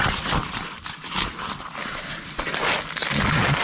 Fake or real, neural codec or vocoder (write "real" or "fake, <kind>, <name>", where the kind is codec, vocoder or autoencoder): real